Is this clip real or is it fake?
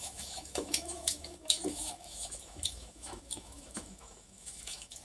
fake